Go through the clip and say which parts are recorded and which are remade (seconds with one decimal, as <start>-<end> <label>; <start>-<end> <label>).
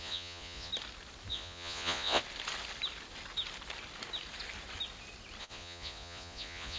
0.0-0.7 remade; 0.7-1.3 recorded; 1.3-2.2 remade; 2.2-5.4 recorded; 5.4-6.8 remade